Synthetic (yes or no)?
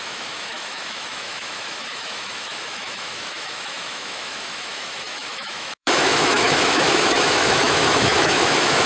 yes